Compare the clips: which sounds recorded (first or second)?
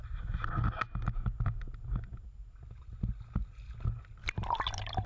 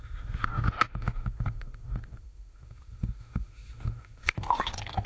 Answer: first